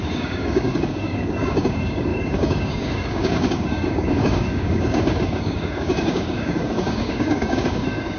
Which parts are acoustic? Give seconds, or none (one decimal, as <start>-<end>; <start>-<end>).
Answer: none